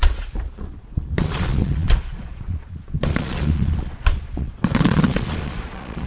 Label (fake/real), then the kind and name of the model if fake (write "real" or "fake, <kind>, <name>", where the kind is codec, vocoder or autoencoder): fake, vocoder, Vocos